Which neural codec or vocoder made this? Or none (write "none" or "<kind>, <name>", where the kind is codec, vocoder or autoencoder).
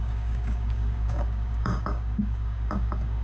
codec, DAC